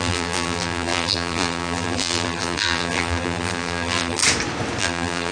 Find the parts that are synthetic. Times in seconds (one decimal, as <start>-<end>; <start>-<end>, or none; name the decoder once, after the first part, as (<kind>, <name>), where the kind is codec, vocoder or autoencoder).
0.0-4.2 (vocoder, BigVGAN v2); 4.8-5.3